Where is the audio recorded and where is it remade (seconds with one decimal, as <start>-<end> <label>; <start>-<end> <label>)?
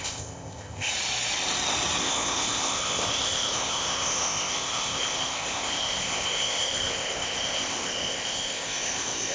0.0-0.9 remade; 0.9-2.0 recorded; 2.0-9.3 remade